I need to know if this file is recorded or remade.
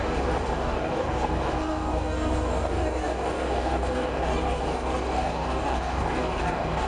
remade